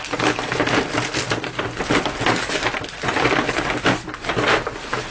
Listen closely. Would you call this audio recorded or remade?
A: recorded